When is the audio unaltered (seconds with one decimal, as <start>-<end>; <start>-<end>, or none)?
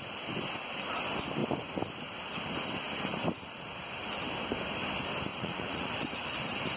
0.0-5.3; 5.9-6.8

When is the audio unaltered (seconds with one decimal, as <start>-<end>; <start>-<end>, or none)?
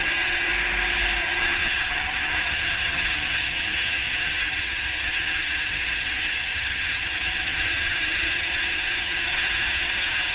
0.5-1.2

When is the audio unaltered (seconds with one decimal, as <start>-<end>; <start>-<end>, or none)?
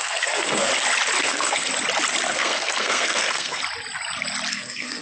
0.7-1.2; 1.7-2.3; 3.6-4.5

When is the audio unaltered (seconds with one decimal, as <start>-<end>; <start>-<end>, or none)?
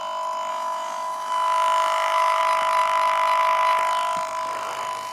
0.0-0.5; 2.4-5.1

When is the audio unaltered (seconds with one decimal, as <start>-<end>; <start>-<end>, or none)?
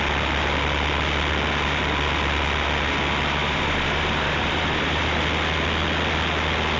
0.0-3.4; 5.2-6.8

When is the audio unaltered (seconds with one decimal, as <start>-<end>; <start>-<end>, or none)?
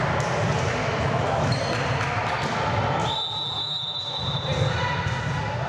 0.0-0.8; 1.6-3.6; 4.1-5.7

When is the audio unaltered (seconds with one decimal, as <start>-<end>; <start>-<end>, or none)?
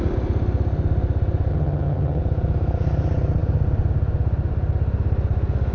0.0-1.5; 2.2-5.7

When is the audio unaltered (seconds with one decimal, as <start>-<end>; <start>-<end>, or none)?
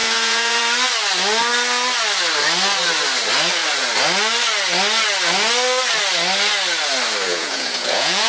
0.6-7.3